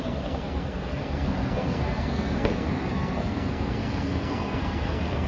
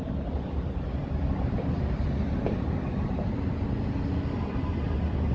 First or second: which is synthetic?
first